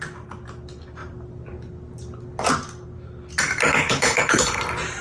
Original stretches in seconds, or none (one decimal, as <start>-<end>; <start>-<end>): 0.0-3.7; 4.6-5.0